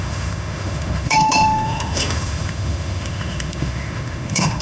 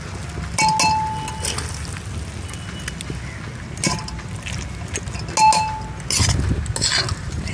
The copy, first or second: first